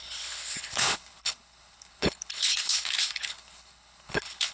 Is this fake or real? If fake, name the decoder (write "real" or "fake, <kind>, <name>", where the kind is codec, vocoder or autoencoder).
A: fake, codec, HILCodec